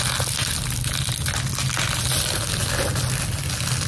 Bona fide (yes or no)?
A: yes